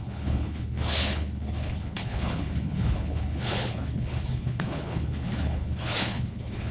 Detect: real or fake fake